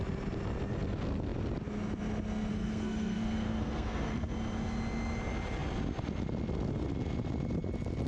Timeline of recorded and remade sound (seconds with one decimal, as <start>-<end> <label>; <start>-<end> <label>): 0.0-2.5 recorded; 2.5-4.3 remade; 4.3-8.1 recorded